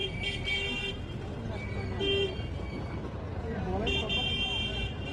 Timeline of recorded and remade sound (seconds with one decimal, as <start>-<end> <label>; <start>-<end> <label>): 0.0-5.1 recorded

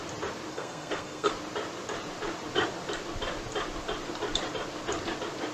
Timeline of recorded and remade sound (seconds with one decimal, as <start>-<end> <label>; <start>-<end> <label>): 0.0-0.5 recorded; 0.5-1.3 remade; 1.3-5.5 recorded